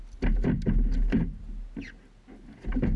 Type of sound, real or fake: real